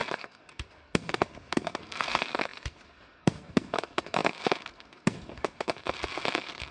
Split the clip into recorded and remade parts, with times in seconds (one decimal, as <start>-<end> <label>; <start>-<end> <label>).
0.0-6.7 remade